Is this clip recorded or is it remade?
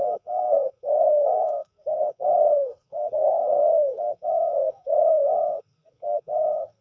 remade